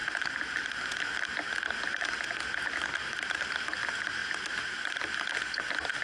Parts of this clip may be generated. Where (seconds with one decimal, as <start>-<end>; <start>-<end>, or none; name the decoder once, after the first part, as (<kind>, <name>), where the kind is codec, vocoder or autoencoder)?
none